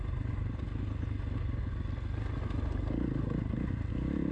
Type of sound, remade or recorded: recorded